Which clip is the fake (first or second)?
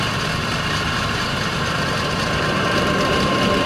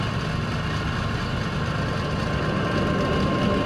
first